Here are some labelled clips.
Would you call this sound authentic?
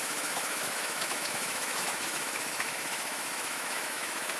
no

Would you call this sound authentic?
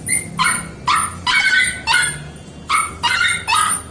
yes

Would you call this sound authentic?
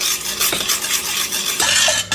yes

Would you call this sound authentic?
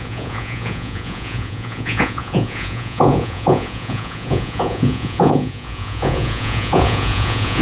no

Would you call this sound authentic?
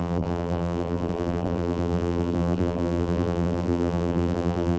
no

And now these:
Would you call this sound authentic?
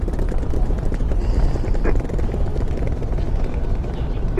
yes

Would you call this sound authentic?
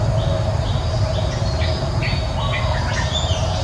yes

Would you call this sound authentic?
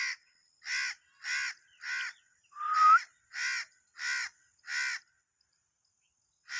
yes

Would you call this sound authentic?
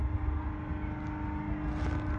yes